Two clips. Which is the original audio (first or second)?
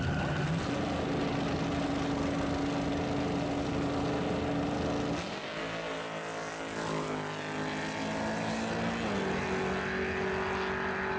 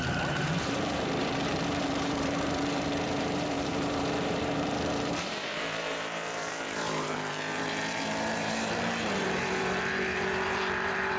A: first